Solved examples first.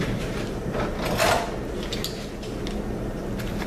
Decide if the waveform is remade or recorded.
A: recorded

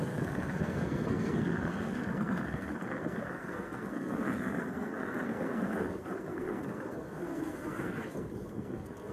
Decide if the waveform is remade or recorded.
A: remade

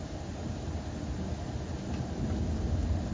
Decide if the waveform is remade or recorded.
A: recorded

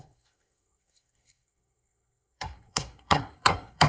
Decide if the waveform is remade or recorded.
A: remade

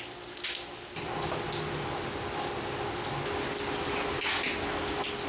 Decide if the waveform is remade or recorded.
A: recorded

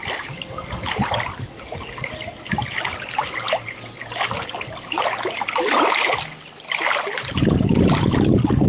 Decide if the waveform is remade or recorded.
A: recorded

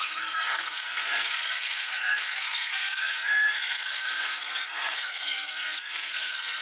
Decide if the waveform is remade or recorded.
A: remade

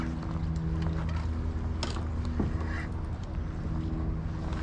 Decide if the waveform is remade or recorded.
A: recorded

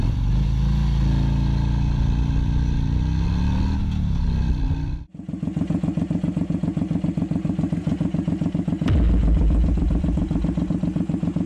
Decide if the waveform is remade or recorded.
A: recorded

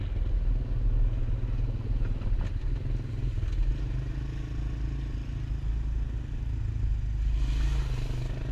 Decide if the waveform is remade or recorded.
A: recorded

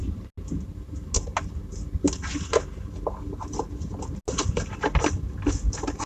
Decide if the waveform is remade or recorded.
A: recorded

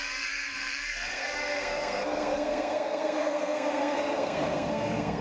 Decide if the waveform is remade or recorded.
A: remade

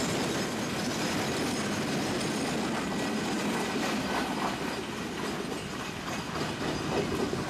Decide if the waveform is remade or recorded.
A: recorded